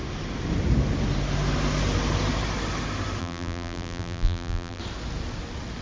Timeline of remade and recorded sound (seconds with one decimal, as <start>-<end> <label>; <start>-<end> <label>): 0.0-3.2 recorded; 3.2-4.8 remade; 4.8-5.8 recorded